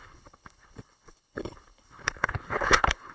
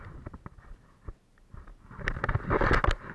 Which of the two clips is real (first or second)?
second